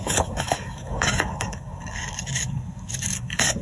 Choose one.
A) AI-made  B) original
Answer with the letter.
A